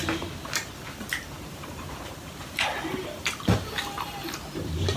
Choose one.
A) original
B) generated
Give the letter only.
B